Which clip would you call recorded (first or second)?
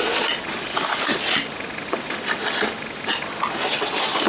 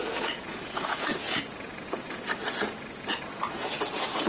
first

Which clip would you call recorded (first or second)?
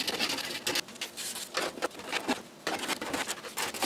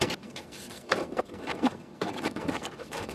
first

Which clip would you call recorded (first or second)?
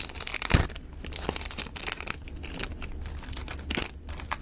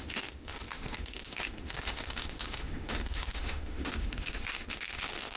first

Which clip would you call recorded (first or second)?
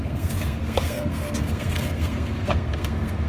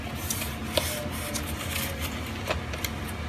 second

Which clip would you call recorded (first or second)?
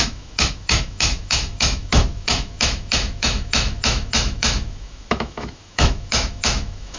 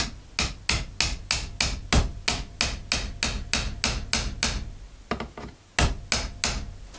second